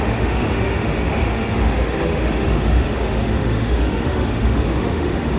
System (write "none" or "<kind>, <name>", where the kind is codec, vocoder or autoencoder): autoencoder, DAC-VAE